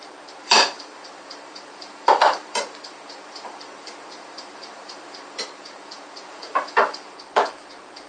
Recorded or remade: remade